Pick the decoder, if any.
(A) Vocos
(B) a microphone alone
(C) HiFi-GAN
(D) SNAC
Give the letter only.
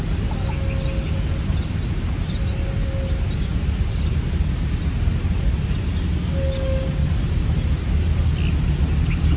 B